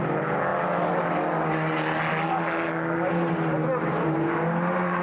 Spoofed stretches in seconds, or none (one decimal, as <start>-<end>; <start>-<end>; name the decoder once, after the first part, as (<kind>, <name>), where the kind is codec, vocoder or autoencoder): none